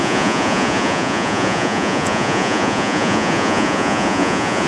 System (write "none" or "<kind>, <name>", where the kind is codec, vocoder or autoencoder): vocoder, Vocos